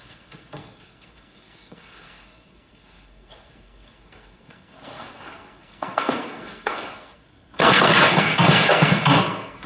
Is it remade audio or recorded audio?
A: remade